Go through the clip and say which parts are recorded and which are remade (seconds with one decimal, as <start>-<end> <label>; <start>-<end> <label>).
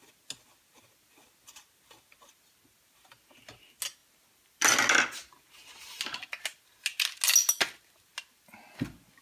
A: 0.0-9.2 recorded